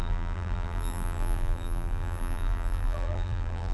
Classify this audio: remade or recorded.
remade